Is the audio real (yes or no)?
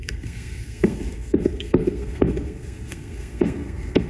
no